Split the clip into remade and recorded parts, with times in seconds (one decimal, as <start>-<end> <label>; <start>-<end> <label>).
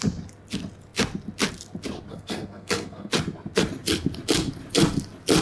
0.0-2.1 recorded; 2.1-3.1 remade; 3.1-5.4 recorded